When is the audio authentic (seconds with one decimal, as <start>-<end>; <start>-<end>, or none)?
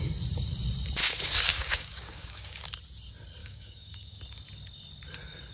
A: 0.0-1.0; 2.6-3.4; 4.2-5.5